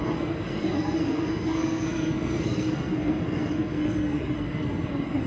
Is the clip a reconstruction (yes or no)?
yes